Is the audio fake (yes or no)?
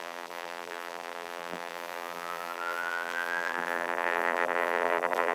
yes